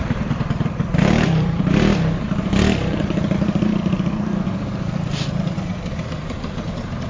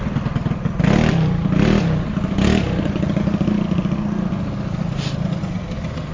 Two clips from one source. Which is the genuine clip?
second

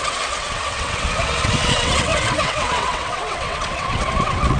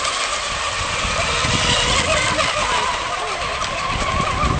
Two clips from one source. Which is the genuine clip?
second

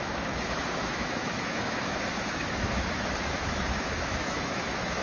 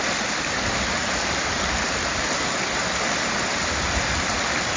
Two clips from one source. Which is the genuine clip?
second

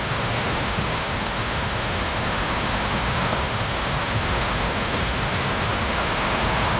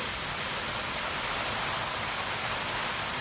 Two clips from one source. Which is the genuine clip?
second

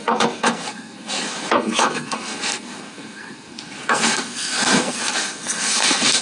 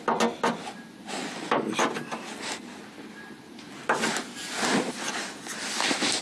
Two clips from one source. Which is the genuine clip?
second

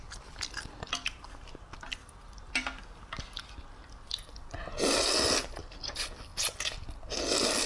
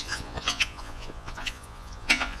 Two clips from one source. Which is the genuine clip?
first